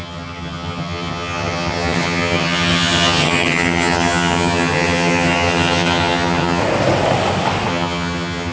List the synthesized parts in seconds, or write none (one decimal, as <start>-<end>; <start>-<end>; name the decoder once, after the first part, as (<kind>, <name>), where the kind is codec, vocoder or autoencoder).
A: 0.0-6.6 (vocoder, HiFi-GAN); 7.7-8.5